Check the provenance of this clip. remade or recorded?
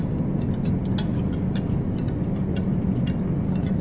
recorded